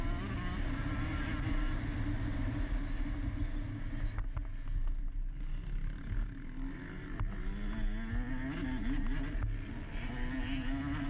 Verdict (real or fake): real